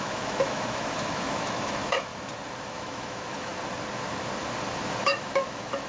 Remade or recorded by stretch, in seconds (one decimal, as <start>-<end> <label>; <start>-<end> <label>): 0.0-2.1 remade; 2.1-2.7 recorded; 2.7-3.5 remade; 3.5-5.0 recorded; 5.0-5.9 remade